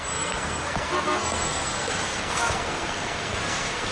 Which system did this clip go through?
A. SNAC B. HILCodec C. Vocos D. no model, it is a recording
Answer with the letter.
A